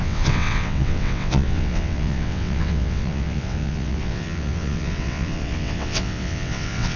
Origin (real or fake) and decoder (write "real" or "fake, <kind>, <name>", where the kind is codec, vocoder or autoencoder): fake, vocoder, WaveNeXt